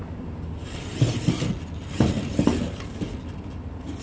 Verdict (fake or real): real